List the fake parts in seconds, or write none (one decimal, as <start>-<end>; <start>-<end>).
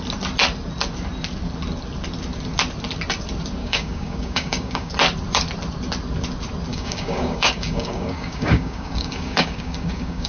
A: 3.6-4.9; 6.7-10.3